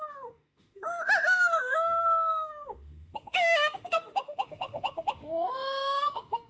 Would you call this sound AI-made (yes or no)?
yes